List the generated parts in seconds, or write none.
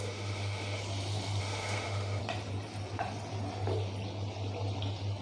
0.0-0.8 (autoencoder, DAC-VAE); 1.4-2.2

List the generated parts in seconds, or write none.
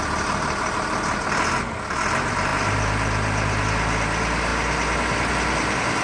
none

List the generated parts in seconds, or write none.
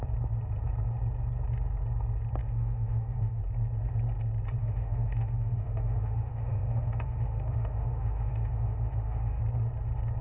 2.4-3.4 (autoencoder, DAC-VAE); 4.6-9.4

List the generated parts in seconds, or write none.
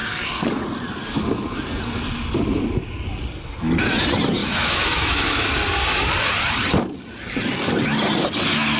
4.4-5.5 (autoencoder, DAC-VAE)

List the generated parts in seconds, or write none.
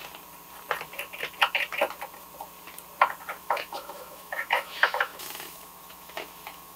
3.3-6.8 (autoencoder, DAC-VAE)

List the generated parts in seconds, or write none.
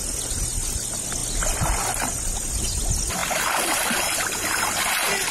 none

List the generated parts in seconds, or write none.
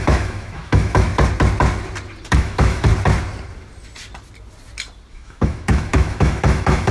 0.0-1.1 (autoencoder, DAC-VAE); 2.3-2.9; 5.1-6.9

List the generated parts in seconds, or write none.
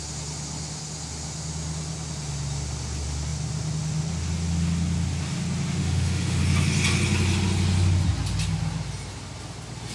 5.8-6.4 (autoencoder, DAC-VAE)